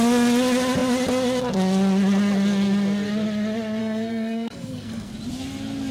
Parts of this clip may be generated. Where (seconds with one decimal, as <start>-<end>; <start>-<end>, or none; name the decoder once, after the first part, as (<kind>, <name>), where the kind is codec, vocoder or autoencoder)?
3.8-5.1 (codec, SNAC)